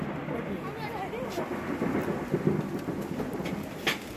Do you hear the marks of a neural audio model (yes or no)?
no